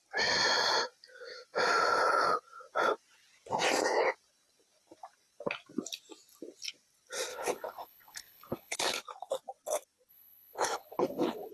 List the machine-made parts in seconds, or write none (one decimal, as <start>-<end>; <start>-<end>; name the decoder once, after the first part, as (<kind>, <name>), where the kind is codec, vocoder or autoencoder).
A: 7.3-9.0 (codec, HILCodec); 10.1-11.5